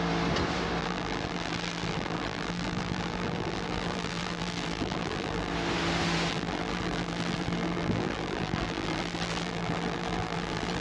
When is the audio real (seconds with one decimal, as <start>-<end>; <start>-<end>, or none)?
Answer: 0.0-0.8; 5.5-6.3